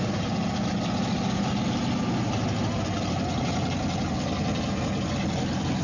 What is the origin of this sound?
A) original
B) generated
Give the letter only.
A